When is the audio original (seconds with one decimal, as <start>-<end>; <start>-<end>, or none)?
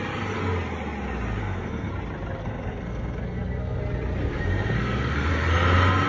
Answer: 0.0-1.4; 1.9-2.4; 3.8-4.2; 5.3-6.1